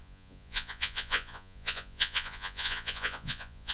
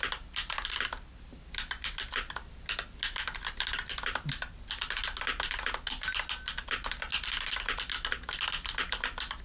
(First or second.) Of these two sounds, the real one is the second